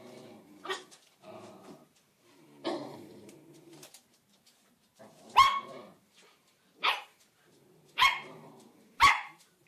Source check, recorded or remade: remade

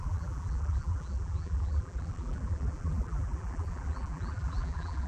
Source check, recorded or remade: remade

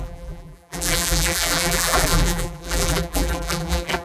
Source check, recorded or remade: remade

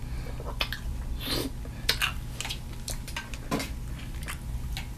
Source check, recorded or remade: recorded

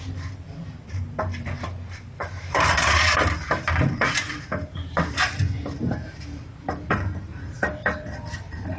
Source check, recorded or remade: remade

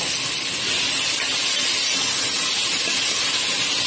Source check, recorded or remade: recorded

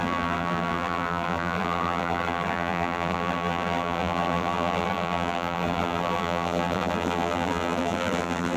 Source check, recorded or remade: remade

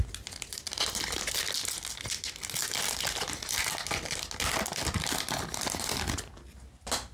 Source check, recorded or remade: recorded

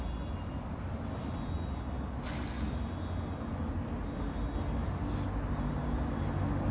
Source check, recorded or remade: recorded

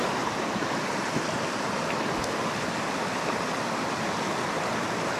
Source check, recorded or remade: recorded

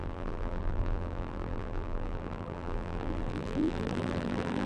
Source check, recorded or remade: remade